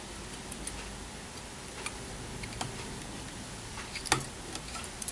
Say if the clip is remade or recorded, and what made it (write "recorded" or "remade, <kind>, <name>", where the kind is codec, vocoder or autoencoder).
recorded